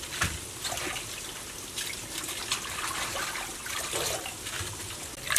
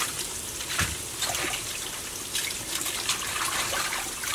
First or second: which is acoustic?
first